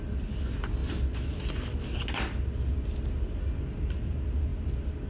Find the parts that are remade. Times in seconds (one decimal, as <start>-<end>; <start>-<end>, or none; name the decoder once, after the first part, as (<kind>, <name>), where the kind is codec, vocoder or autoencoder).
none